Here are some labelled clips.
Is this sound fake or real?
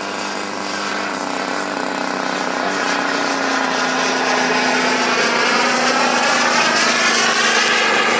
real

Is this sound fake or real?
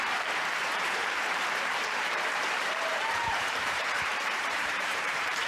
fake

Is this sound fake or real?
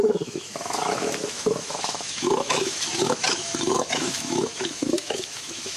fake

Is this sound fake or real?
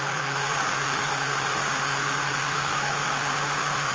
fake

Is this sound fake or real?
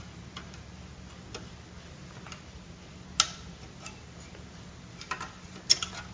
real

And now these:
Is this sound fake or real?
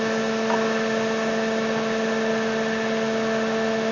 real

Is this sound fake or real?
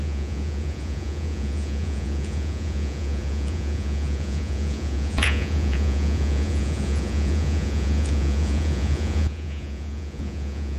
fake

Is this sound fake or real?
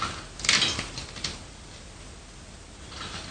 real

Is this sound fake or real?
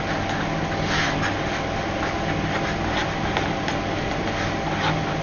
real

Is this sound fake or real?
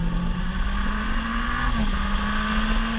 real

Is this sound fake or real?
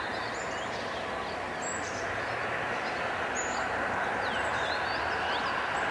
real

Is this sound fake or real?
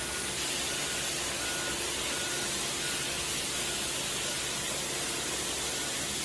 real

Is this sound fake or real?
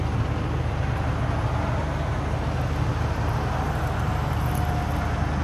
real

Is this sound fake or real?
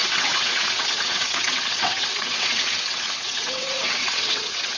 fake